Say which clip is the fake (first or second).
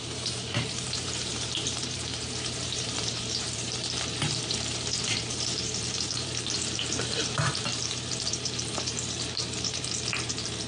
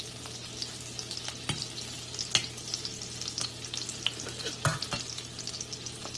first